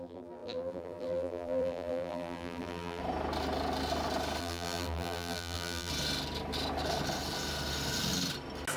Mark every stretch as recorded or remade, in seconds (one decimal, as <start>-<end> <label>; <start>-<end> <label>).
0.0-3.0 remade; 3.0-4.4 recorded; 4.4-5.9 remade; 5.9-8.8 recorded